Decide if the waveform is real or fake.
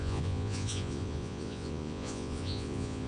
fake